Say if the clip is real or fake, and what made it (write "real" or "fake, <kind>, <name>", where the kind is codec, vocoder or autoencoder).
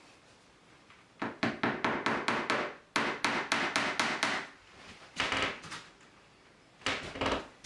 real